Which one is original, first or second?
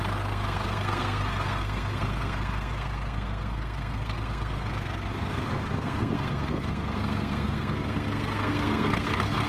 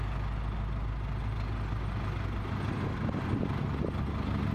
second